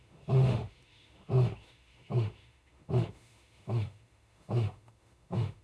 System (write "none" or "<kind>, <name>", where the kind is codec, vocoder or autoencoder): autoencoder, DAC-VAE